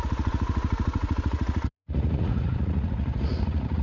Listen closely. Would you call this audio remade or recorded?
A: remade